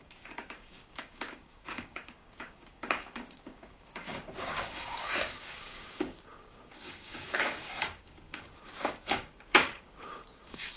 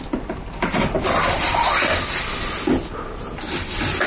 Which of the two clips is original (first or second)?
second